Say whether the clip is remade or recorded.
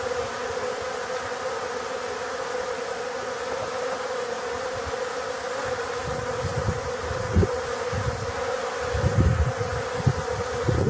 recorded